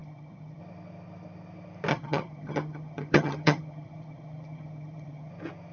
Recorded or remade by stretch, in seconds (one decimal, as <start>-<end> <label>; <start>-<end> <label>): 0.0-0.6 remade; 0.6-1.9 recorded; 1.9-5.3 remade; 5.3-5.7 recorded